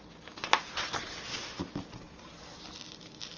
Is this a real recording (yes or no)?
yes